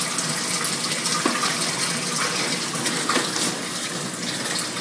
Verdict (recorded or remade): recorded